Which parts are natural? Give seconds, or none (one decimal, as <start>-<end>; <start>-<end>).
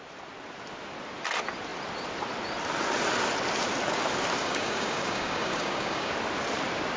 0.0-4.4; 6.1-7.0